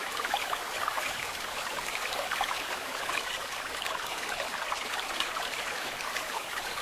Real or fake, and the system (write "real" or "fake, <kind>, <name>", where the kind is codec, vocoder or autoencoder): fake, codec, DAC